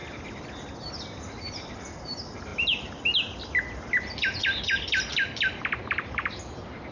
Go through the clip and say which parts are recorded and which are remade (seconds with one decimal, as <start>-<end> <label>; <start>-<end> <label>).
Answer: 0.0-1.4 recorded; 1.4-2.5 remade; 2.5-4.4 recorded; 4.4-5.1 remade; 5.1-5.8 recorded; 5.8-6.9 remade